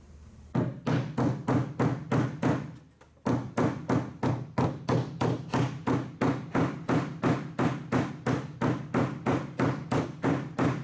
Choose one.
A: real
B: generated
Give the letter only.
A